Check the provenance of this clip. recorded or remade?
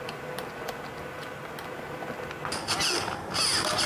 recorded